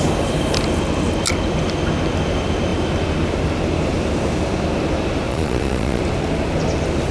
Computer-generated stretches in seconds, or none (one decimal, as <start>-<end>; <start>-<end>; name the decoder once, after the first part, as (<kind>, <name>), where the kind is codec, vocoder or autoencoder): 5.3-6.0 (vocoder, Vocos)